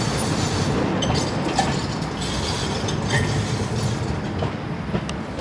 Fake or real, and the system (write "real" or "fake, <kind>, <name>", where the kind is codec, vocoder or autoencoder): real